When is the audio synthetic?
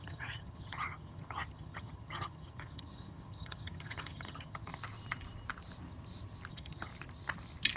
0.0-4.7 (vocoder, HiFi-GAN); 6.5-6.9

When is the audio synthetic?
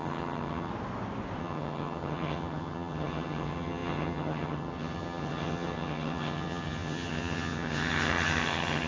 0.0-0.7 (vocoder, HiFi-GAN); 1.4-8.9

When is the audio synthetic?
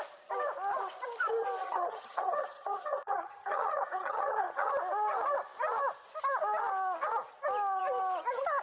1.6-4.7 (vocoder, HiFi-GAN)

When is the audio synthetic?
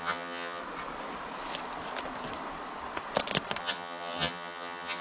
0.0-0.6 (vocoder, HiFi-GAN); 3.6-5.0